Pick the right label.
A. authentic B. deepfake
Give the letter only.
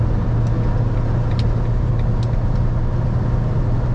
A